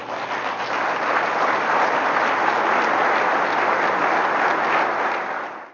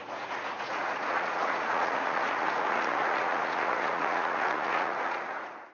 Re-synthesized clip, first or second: second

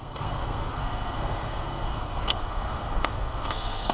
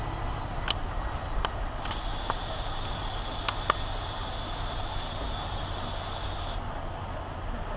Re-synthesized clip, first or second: first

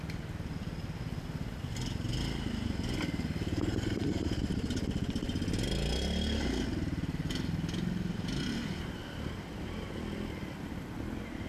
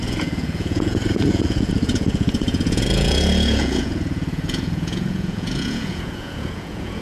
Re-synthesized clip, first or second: second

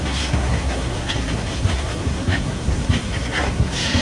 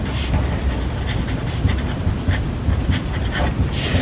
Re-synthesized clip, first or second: first